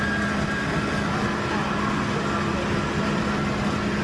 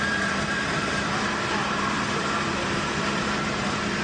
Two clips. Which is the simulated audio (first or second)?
second